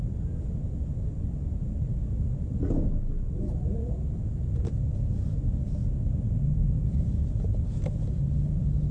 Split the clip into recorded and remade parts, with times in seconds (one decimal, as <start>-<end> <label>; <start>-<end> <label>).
0.0-8.9 recorded